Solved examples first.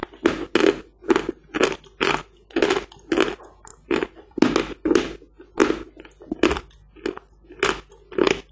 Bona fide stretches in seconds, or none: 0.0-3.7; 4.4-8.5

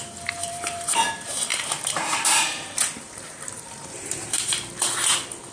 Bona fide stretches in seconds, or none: 0.0-0.4; 0.9-1.5; 4.7-5.5

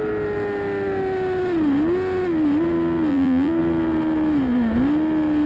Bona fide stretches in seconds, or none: 0.0-3.1; 3.6-5.5